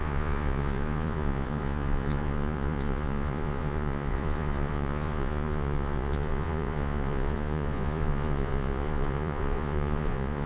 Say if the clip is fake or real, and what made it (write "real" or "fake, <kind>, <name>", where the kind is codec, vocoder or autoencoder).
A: fake, vocoder, Vocos